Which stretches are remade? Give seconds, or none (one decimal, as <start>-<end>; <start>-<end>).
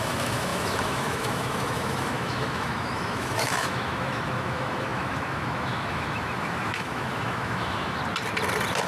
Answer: 0.0-8.0